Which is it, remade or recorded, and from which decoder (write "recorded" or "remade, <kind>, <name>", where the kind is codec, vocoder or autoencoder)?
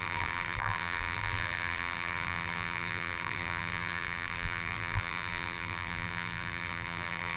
remade, vocoder, BigVGAN v2